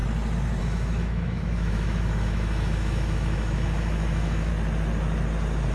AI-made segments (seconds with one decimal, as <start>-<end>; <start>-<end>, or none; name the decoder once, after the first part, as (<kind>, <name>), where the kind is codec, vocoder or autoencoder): 0.6-4.5 (autoencoder, DAC-VAE)